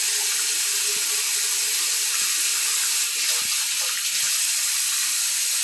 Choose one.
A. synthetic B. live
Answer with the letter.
B